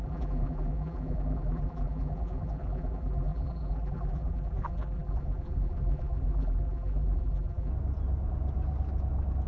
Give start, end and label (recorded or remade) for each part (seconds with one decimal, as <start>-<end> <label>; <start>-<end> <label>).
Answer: 0.0-7.7 remade; 7.7-9.5 recorded